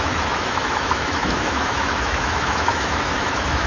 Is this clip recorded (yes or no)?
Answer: no